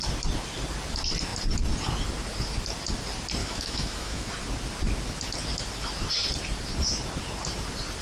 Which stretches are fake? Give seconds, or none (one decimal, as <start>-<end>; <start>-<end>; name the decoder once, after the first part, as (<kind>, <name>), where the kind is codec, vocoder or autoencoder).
3.4-4.3 (autoencoder, DAC-VAE)